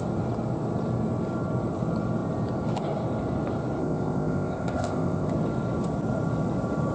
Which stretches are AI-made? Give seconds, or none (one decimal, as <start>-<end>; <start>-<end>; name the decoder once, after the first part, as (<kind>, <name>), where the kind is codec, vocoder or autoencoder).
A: 3.8-5.3 (codec, ZipCodec)